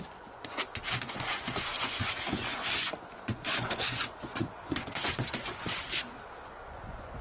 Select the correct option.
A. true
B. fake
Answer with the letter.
B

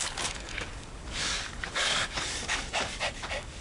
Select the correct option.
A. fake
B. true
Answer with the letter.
A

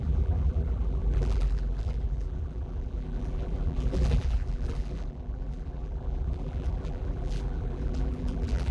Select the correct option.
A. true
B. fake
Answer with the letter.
B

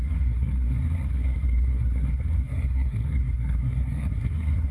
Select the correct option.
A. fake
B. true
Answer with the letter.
A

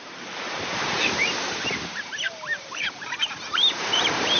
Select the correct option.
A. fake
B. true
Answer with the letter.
A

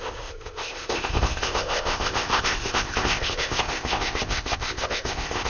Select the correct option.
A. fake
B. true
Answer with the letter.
A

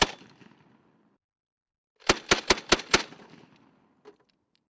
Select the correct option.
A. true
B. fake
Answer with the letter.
A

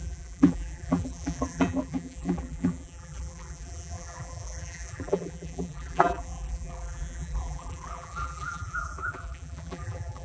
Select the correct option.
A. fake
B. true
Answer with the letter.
A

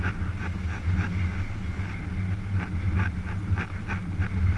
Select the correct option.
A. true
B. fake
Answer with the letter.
A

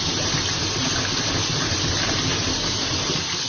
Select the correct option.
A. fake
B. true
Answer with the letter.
B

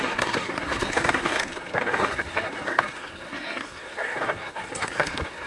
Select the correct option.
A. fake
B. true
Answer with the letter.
A